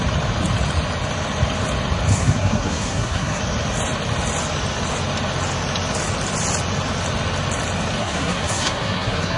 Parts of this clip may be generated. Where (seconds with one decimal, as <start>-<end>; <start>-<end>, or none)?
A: 2.1-3.4; 8.0-9.4